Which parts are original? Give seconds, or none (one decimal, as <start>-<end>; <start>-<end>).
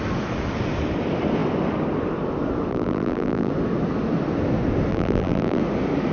0.0-2.7; 3.5-4.9; 5.6-6.1